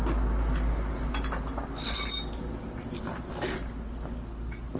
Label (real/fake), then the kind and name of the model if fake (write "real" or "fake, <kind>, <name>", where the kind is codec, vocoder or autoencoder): real